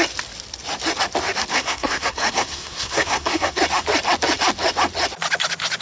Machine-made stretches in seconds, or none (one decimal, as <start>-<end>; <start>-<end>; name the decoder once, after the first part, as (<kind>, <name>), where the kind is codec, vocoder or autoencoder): 1.5-3.6 (codec, SNAC)